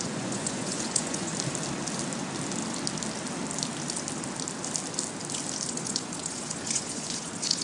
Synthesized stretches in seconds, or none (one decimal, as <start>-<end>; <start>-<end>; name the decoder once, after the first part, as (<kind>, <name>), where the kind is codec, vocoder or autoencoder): 0.0-1.3 (vocoder, Vocos); 5.7-7.6